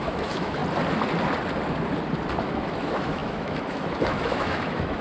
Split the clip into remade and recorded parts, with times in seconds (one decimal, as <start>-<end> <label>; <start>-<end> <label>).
0.0-0.6 remade; 0.6-2.4 recorded; 2.4-5.0 remade